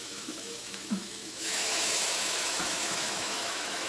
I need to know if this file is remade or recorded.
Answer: remade